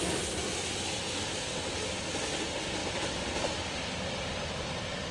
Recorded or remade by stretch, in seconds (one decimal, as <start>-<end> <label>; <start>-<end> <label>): 0.0-5.1 recorded